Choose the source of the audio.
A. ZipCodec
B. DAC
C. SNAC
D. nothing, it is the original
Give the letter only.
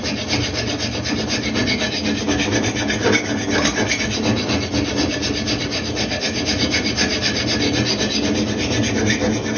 D